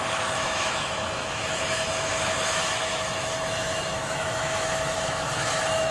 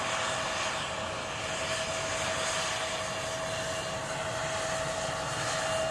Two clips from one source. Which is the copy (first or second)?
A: first